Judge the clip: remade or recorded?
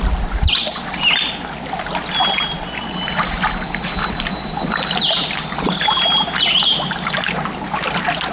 recorded